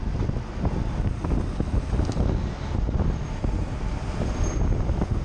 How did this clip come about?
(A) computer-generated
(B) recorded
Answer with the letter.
B